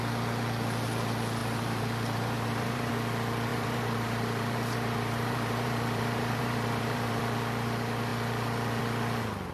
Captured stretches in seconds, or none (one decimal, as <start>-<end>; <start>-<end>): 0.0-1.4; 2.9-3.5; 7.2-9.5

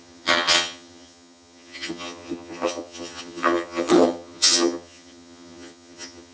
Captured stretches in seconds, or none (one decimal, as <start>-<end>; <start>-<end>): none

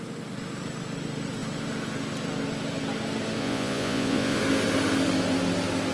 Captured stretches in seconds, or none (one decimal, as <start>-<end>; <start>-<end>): 0.0-3.4; 4.4-5.9

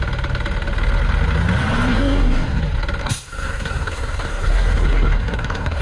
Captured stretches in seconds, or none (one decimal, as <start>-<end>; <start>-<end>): 0.0-1.9; 2.6-3.0

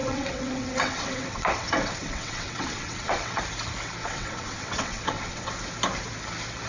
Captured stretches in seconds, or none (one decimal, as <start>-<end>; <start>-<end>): 3.4-4.0; 5.5-6.7

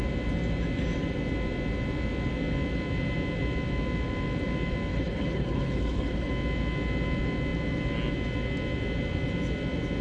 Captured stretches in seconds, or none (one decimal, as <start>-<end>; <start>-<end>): 0.0-4.9; 6.3-10.0

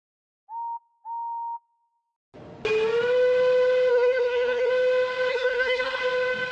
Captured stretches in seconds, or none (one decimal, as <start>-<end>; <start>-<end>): 0.0-3.9; 4.7-5.3; 6.0-6.5